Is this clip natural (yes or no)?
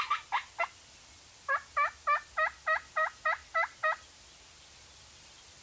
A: yes